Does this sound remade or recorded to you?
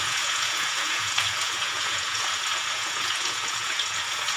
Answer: remade